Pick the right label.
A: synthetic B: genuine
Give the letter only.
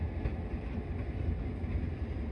B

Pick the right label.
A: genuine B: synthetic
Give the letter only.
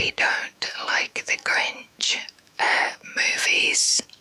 B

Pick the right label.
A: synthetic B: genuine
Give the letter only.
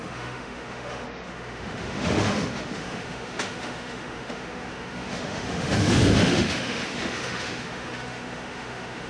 A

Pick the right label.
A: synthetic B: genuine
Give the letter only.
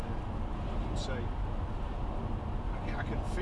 B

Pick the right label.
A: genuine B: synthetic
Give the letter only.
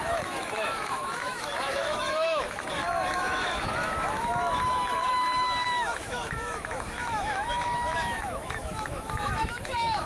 B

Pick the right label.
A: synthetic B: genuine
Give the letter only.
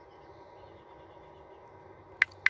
B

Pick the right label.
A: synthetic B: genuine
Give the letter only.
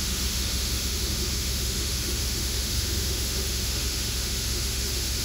A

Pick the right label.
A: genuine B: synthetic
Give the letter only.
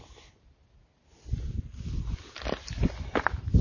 A